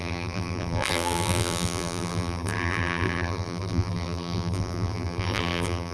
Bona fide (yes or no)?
no